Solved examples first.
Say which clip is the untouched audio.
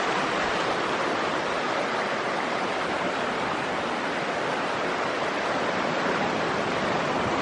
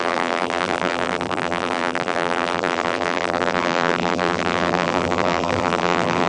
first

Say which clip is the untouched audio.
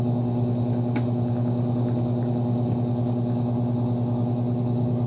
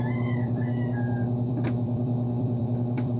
first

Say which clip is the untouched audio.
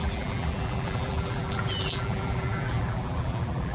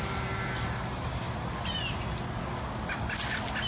second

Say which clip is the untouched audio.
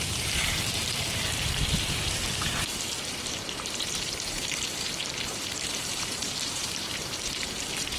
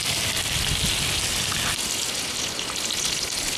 second